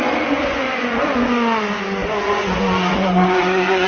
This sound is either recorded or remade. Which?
remade